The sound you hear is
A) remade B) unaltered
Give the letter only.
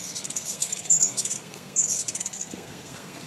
A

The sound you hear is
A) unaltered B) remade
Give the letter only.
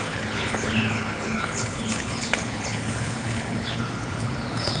B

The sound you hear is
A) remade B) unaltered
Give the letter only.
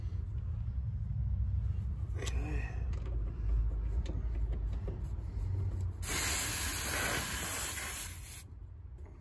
B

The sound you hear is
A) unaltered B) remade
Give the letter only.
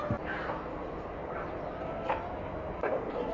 A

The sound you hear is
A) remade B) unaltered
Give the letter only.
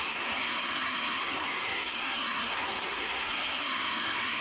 A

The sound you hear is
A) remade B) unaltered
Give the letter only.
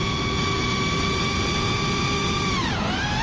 B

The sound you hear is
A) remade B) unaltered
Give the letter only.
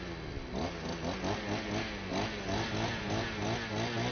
B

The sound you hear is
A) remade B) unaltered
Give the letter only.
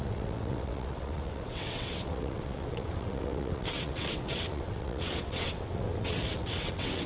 A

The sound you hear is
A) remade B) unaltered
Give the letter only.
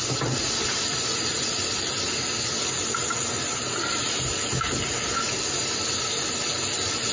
B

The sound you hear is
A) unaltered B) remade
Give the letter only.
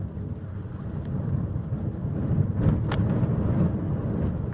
A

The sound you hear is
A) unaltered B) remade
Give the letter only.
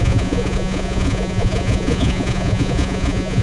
B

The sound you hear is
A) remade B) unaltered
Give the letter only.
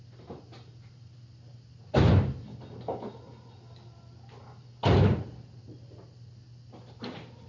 B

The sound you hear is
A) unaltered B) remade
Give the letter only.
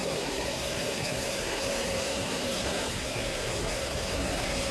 B